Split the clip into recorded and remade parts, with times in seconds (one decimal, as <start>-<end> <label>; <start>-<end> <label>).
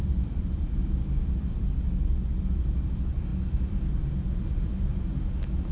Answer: 0.0-0.8 remade; 0.8-1.6 recorded; 1.6-4.9 remade; 4.9-5.7 recorded